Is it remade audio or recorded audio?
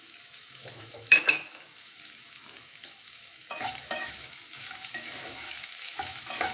remade